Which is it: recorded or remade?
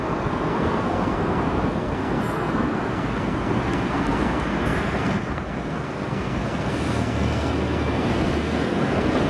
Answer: remade